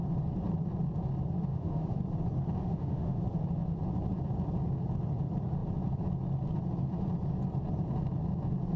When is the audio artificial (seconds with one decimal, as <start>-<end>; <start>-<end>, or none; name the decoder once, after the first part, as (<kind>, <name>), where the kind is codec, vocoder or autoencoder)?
1.5-2.0 (autoencoder, DAC-VAE); 2.6-3.2